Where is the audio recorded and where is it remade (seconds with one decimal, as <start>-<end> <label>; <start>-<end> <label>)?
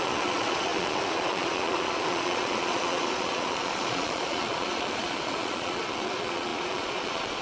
0.0-7.4 remade